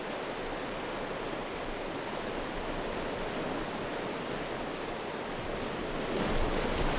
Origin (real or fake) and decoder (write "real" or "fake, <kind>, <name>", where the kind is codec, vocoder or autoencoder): real